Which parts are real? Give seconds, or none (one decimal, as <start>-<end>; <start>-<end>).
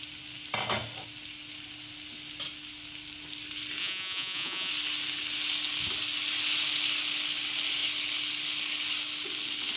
0.0-3.8; 4.7-9.8